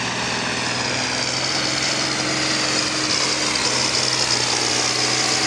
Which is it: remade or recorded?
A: recorded